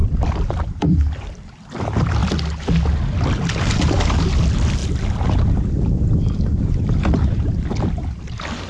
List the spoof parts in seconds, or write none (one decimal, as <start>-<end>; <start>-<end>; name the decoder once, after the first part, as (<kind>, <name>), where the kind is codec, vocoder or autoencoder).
0.0-2.2 (vocoder, BigVGAN v2); 3.9-8.7